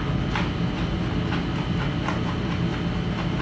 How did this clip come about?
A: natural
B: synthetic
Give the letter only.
A